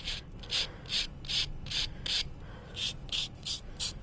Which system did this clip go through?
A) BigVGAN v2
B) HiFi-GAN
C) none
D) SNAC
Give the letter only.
A